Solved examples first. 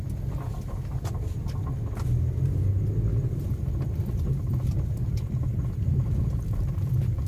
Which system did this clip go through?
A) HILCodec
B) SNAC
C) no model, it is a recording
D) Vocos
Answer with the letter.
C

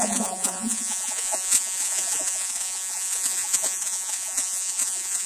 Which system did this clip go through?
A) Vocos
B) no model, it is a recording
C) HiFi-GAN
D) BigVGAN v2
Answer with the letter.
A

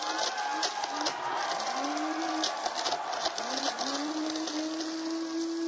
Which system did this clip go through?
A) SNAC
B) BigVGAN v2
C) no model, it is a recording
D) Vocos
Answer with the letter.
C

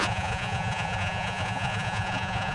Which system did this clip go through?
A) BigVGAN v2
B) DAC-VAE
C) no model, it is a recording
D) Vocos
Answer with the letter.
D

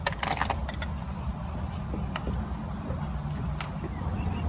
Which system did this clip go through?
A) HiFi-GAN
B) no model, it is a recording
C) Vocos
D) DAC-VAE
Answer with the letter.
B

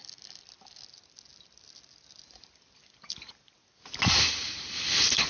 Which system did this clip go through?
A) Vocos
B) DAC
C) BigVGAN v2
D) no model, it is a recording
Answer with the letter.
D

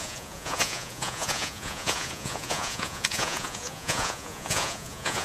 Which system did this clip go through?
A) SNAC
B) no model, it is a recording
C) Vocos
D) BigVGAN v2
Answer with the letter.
C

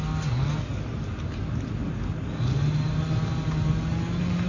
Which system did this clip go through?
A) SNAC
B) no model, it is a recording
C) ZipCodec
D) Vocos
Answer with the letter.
B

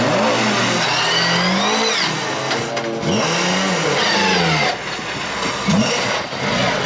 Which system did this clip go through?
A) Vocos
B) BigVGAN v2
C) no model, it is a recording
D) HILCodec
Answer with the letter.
C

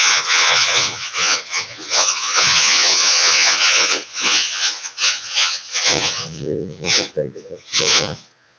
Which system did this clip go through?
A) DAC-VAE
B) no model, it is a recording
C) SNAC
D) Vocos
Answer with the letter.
D